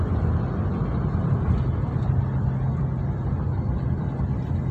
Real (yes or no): yes